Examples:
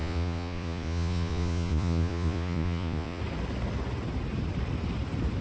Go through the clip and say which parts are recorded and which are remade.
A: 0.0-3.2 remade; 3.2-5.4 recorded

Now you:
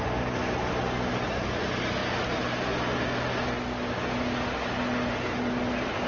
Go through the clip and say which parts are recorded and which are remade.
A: 0.0-6.1 recorded

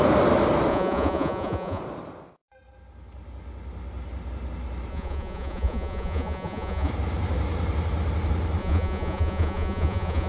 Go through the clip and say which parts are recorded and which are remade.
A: 0.0-0.7 recorded; 0.7-1.8 remade; 1.8-4.9 recorded; 4.9-6.9 remade; 6.9-8.6 recorded; 8.6-10.3 remade

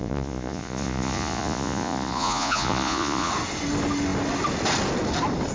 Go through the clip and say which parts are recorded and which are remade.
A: 0.0-3.3 remade; 3.3-5.5 recorded

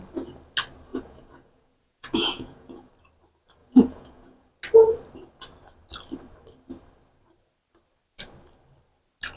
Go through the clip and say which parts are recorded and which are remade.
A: 0.0-0.9 recorded; 0.9-2.9 remade; 2.9-3.6 recorded; 3.6-4.5 remade; 4.5-9.4 recorded

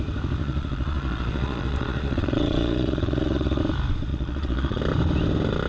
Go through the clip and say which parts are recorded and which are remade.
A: 0.0-0.4 recorded; 0.4-3.6 remade; 3.6-4.1 recorded; 4.1-4.8 remade; 4.8-5.7 recorded